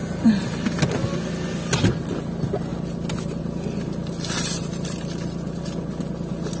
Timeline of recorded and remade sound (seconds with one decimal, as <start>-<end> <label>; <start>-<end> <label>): 0.0-6.6 recorded